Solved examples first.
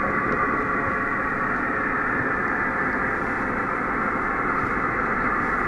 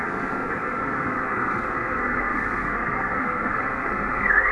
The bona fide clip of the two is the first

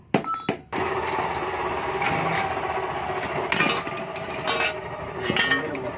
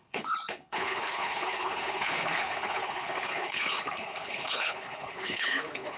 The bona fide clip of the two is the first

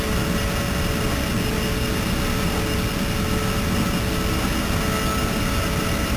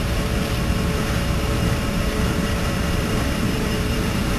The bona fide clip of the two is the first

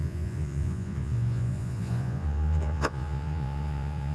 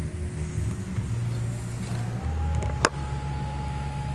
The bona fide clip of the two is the second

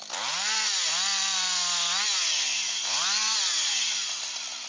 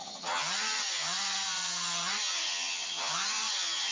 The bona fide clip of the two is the first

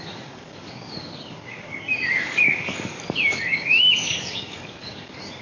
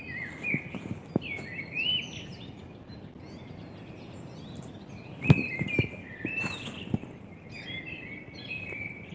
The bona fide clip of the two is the second